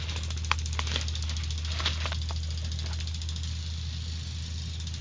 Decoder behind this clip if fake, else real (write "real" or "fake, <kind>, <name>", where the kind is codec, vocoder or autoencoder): real